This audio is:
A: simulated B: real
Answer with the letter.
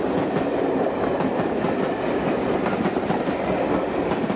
B